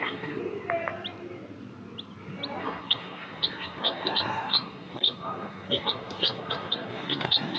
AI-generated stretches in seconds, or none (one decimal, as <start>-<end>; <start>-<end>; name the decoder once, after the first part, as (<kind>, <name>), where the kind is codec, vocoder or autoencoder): 0.0-0.4 (codec, SNAC); 2.6-7.6